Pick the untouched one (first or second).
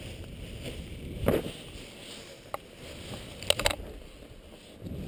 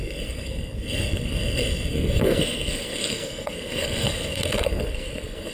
first